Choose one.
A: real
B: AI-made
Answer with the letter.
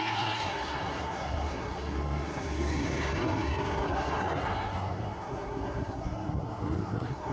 B